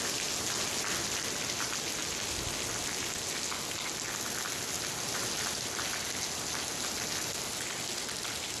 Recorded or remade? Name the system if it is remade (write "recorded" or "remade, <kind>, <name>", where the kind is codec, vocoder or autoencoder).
recorded